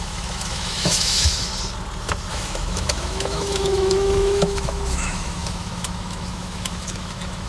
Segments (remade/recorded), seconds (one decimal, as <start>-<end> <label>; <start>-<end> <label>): 0.0-1.5 remade; 1.5-2.3 recorded; 2.3-7.5 remade